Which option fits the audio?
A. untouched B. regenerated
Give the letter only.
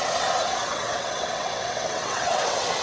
B